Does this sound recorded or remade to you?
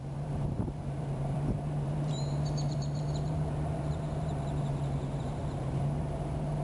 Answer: remade